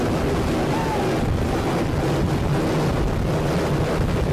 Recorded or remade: recorded